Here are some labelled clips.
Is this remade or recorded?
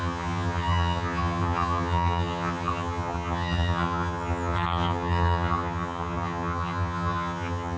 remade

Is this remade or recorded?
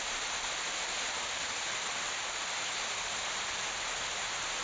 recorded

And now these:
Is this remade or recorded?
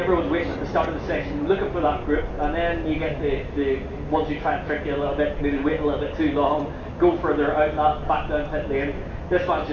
recorded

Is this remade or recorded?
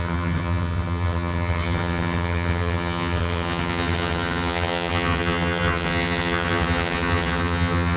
remade